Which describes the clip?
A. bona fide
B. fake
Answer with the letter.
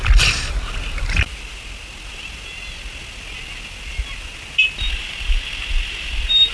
A